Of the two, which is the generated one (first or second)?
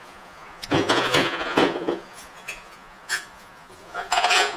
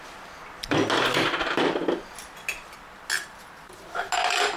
first